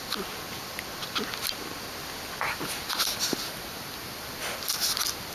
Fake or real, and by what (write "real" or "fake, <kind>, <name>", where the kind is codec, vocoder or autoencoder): real